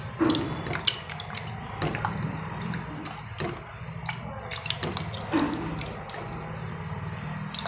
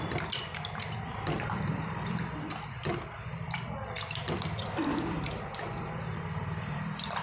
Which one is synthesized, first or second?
second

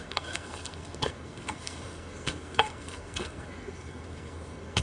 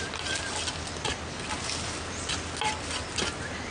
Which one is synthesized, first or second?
first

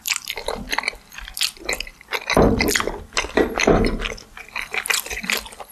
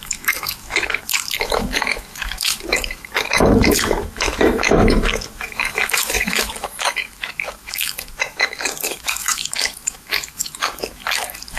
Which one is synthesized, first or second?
second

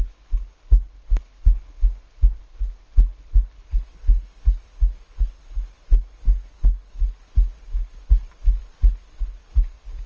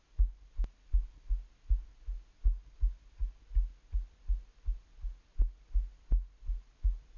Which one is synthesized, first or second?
first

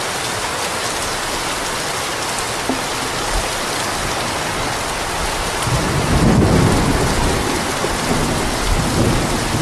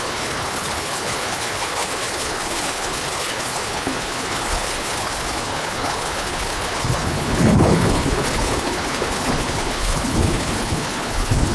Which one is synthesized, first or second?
second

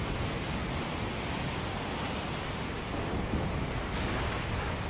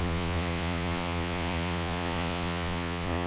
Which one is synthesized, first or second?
second